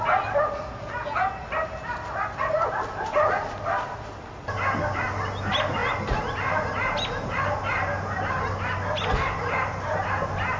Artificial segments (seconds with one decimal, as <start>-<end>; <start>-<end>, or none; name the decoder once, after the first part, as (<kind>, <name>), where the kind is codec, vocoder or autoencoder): none